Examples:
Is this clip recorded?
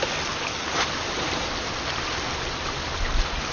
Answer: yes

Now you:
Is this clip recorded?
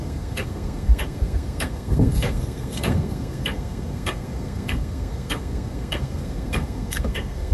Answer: no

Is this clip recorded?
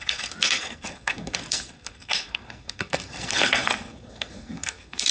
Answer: no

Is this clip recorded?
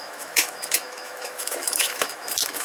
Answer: no